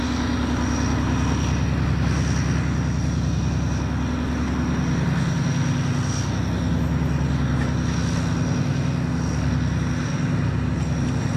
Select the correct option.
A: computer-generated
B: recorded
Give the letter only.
B